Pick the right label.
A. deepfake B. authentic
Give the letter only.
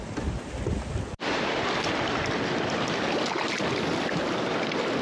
B